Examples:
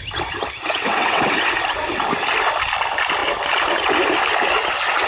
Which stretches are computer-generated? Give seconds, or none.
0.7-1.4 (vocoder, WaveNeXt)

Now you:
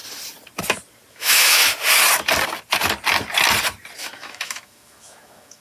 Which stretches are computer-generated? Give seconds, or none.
1.1-1.6 (autoencoder, DAC-VAE); 4.0-5.6

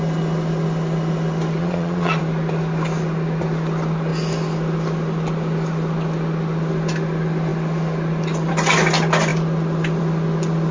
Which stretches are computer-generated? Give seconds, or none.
1.6-2.2 (vocoder, Vocos)

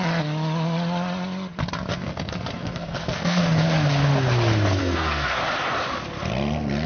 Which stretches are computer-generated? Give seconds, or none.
1.9-3.4 (codec, SNAC); 4.8-5.4

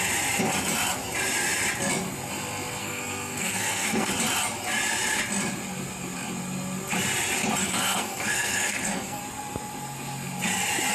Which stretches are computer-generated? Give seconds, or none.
2.8-4.1 (codec, SNAC); 7.6-9.2

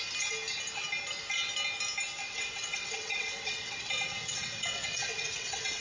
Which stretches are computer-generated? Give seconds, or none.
2.2-5.8 (vocoder, WaveNeXt)

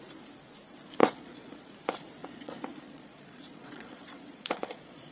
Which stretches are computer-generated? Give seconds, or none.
1.0-1.7 (vocoder, Vocos); 2.2-5.1